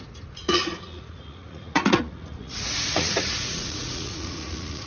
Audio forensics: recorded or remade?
remade